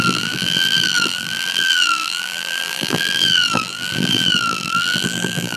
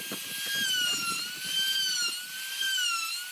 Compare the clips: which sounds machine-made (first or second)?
first